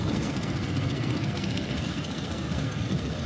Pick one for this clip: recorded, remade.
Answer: remade